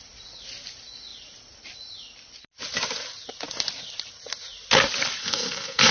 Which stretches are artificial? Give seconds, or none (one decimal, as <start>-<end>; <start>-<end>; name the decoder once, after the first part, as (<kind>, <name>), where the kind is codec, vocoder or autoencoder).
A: 5.2-5.9 (codec, SNAC)